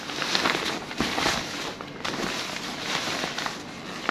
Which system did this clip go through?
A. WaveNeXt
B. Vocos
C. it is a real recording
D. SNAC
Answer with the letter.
C